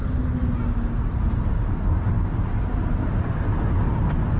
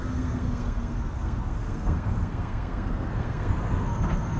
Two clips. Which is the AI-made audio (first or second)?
second